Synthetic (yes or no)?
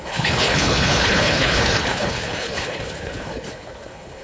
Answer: yes